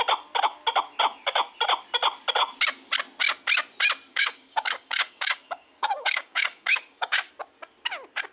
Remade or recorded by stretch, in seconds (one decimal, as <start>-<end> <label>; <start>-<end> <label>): 0.0-4.1 recorded; 4.1-7.3 remade; 7.3-8.3 recorded